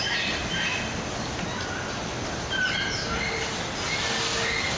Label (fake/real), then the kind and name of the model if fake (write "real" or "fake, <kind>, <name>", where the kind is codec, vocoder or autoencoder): real